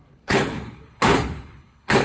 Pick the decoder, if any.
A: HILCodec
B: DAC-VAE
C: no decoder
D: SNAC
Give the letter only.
A